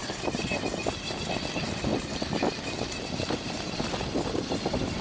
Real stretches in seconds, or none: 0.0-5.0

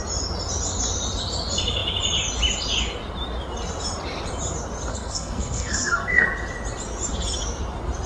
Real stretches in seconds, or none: 0.0-4.9; 6.3-8.1